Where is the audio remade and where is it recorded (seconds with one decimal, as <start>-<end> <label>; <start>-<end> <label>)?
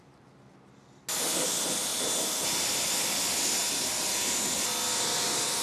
0.0-5.6 recorded